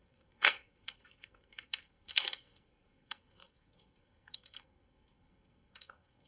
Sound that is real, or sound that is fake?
fake